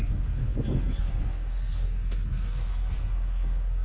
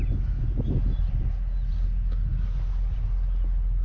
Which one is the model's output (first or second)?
first